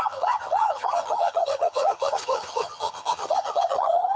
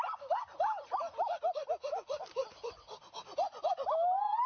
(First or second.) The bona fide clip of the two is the second